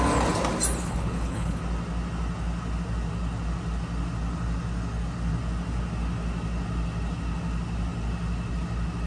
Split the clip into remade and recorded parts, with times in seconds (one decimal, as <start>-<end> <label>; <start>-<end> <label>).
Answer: 0.0-0.8 recorded; 0.8-1.6 remade; 1.6-9.1 recorded